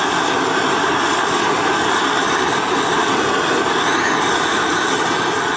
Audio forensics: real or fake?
real